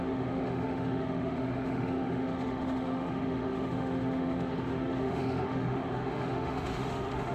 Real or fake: fake